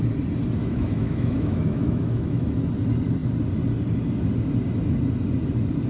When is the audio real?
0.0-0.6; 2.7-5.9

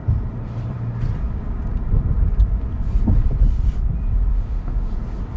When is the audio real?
0.0-4.3; 4.9-5.4

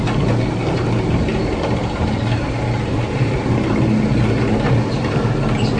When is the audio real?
0.0-5.8

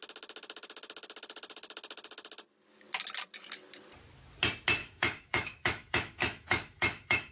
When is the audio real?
0.0-4.8